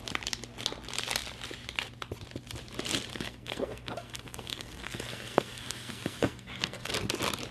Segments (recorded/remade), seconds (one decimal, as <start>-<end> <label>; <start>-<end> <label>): 0.0-3.1 recorded; 3.1-6.9 remade; 6.9-7.5 recorded